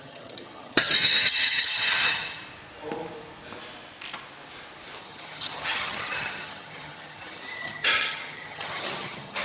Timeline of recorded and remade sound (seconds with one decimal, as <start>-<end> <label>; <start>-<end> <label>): 0.0-2.4 remade; 2.4-5.0 recorded; 5.0-9.4 remade

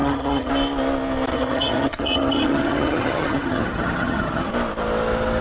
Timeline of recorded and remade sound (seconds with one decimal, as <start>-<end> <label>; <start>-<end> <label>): 0.0-0.5 remade; 0.5-1.3 recorded; 1.3-4.5 remade; 4.5-5.4 recorded

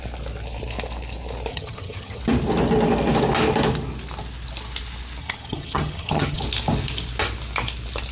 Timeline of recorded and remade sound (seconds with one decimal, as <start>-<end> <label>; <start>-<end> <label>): 0.0-1.5 recorded; 1.5-2.2 remade; 2.2-5.2 recorded; 5.2-6.4 remade; 6.4-8.1 recorded

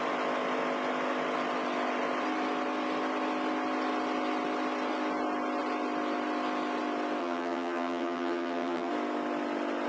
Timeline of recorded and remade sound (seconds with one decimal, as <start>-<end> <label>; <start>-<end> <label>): 0.0-7.2 recorded; 7.2-8.9 remade; 8.9-9.9 recorded

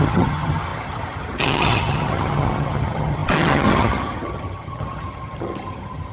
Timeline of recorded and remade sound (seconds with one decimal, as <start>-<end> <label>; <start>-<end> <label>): 0.0-6.1 remade

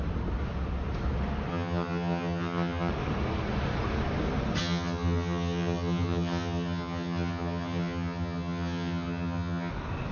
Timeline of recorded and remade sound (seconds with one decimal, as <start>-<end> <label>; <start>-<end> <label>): 0.0-1.5 recorded; 1.5-2.9 remade; 2.9-4.6 recorded; 4.6-9.7 remade; 9.7-10.1 recorded

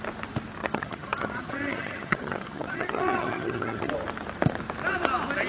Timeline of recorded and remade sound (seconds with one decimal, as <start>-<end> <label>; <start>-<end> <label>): 0.0-0.6 recorded; 0.6-3.9 remade; 3.9-5.5 recorded

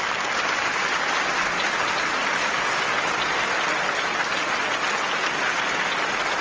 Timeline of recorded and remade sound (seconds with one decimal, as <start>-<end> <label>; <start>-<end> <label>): 0.0-6.4 recorded